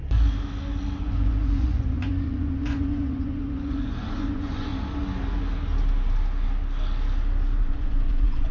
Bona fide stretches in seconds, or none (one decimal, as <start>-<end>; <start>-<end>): 0.0-1.0; 4.7-7.6